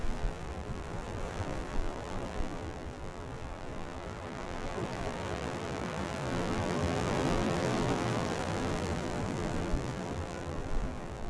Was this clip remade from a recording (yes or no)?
yes